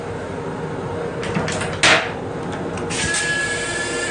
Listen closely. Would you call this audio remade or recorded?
recorded